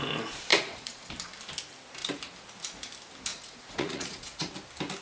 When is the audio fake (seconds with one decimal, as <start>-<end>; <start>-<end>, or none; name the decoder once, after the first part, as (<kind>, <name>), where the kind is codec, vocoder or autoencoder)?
0.5-1.1 (vocoder, Vocos); 3.3-4.5

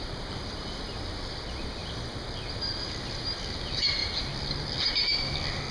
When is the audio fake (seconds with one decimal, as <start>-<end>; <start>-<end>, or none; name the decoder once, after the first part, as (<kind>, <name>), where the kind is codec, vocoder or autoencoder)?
none

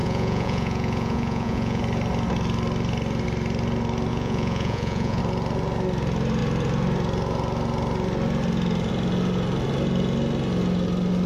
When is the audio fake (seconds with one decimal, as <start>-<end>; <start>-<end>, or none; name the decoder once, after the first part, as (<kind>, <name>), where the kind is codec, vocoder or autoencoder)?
0.0-1.8 (vocoder, Vocos); 4.1-5.2

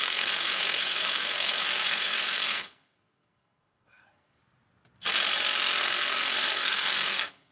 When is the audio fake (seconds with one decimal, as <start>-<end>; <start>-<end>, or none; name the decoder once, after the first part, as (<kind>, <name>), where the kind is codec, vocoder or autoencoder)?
0.0-4.4 (codec, SNAC); 5.8-7.5

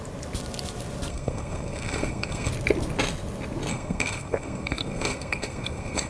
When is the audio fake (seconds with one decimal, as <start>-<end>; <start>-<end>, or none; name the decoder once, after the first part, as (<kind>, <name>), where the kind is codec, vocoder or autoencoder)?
1.1-2.5 (codec, SNAC); 3.7-6.1

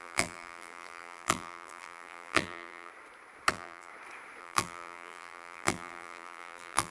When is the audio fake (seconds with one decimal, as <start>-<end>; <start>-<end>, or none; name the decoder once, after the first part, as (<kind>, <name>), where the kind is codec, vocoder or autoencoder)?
0.0-2.9 (vocoder, BigVGAN v2); 3.5-3.9; 4.4-6.9